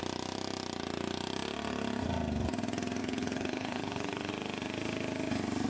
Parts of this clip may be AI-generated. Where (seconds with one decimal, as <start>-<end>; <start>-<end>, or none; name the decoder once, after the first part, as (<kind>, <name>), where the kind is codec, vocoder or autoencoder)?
3.0-4.3 (codec, HILCodec)